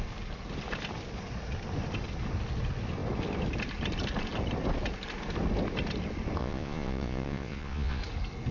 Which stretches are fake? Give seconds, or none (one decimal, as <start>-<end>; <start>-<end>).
6.4-8.0